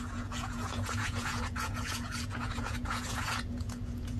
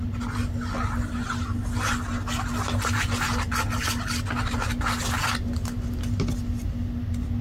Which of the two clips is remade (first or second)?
first